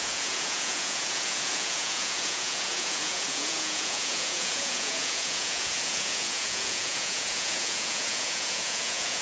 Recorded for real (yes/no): no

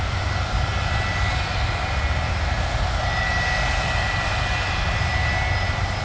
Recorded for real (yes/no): yes